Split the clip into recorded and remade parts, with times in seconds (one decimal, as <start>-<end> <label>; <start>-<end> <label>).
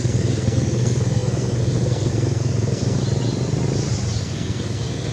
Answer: 0.0-3.0 remade; 3.0-4.2 recorded; 4.2-5.1 remade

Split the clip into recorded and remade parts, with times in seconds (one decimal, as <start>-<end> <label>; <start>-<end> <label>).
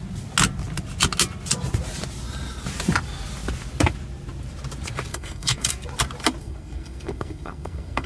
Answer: 0.0-5.1 recorded; 5.1-5.7 remade; 5.7-6.4 recorded; 6.4-8.1 remade